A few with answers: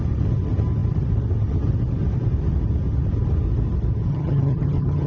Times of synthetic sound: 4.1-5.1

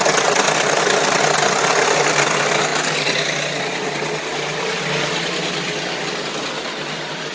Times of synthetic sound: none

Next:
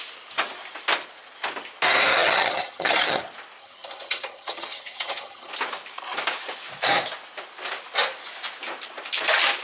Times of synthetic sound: 2.1-3.2; 3.6-5.5

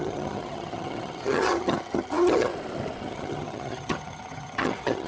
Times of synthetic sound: 0.0-2.5; 3.0-5.1